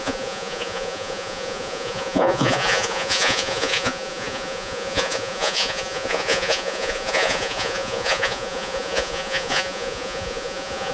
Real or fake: fake